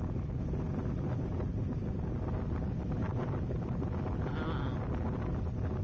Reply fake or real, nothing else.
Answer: real